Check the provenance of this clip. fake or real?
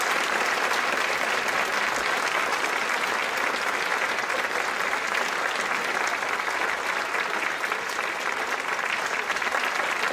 real